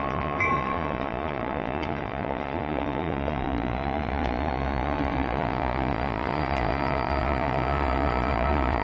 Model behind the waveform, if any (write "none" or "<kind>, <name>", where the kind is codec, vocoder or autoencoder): vocoder, Vocos